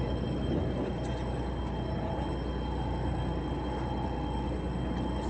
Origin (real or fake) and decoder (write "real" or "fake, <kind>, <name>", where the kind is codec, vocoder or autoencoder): real